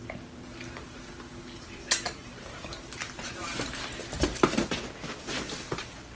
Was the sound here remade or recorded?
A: recorded